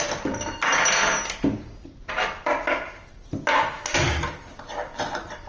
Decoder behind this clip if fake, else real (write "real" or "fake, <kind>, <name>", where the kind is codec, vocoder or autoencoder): real